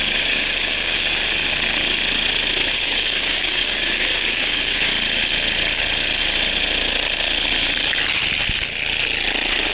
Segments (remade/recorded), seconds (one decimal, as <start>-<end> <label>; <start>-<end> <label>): 0.0-1.2 remade; 1.2-2.7 recorded; 2.7-4.9 remade; 4.9-9.7 recorded